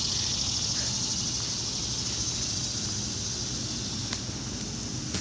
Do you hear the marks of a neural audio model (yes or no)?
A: no